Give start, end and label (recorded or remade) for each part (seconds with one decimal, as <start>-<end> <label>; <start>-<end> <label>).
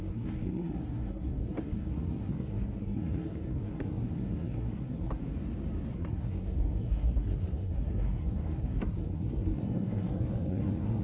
0.0-5.2 remade; 5.2-5.9 recorded; 5.9-11.0 remade